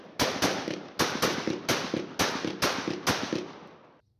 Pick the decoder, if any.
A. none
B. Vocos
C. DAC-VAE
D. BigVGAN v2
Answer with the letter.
A